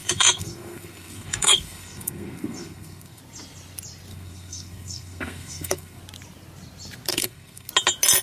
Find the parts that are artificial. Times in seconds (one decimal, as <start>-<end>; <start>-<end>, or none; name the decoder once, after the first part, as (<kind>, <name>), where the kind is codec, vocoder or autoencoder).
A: 0.0-3.2 (codec, SNAC); 4.1-6.0; 7.1-7.7